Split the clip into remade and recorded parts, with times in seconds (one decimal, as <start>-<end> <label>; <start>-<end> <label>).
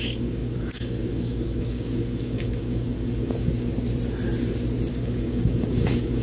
0.0-3.7 remade; 3.7-4.9 recorded; 4.9-6.2 remade